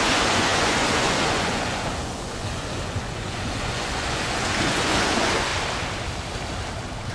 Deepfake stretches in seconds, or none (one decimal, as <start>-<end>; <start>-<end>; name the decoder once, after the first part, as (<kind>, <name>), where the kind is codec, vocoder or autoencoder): 0.0-5.5 (vocoder, Vocos)